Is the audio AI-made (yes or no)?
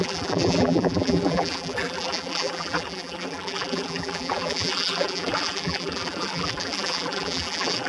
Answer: yes